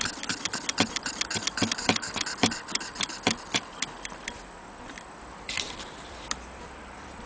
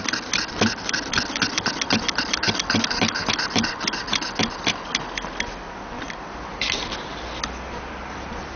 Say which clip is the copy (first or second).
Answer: first